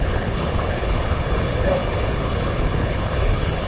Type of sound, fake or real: fake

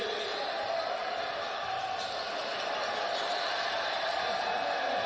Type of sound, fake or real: real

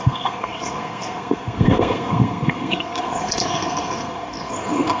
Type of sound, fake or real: fake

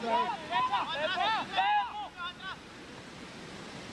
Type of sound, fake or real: real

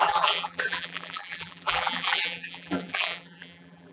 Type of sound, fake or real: fake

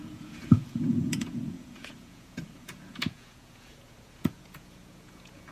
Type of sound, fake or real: fake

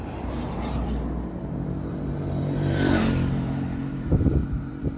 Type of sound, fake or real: fake